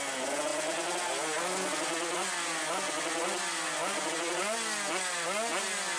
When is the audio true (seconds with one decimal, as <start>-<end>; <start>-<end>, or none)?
0.0-6.0